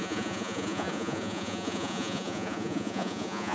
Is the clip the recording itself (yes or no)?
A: no